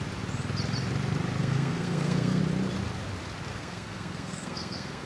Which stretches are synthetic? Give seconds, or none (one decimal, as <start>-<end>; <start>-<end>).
1.4-2.4; 3.5-5.1